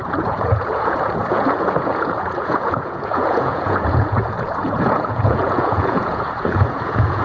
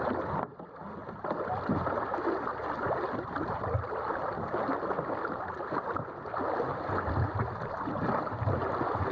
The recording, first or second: second